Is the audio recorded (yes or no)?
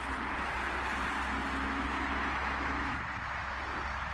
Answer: yes